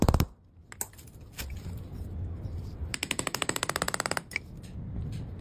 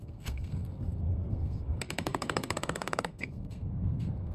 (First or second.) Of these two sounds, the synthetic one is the second